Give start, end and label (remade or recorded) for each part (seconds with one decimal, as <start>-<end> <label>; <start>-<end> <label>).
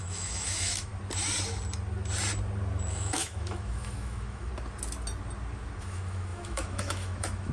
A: 0.0-0.9 remade; 0.9-2.9 recorded; 2.9-4.5 remade; 4.5-5.8 recorded; 5.8-7.5 remade